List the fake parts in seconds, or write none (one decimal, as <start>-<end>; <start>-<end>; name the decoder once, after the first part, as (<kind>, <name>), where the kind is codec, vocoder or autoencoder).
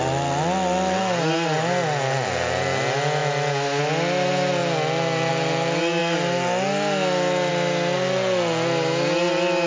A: none